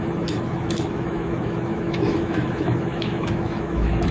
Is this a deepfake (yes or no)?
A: yes